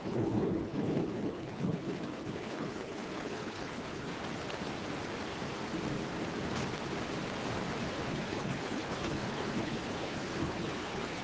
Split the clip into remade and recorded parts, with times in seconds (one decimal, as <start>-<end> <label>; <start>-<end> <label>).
0.0-4.1 remade; 4.1-7.9 recorded; 7.9-11.2 remade